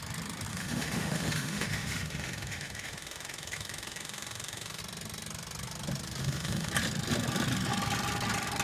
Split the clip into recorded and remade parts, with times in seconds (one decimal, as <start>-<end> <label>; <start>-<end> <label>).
0.0-0.5 recorded; 0.5-4.8 remade; 4.8-6.2 recorded; 6.2-6.7 remade; 6.7-8.6 recorded